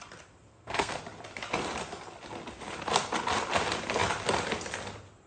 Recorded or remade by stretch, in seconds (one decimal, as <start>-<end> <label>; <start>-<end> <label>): 0.0-0.5 recorded; 0.5-1.0 remade; 1.0-5.3 recorded